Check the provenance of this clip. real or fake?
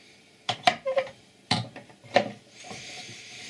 fake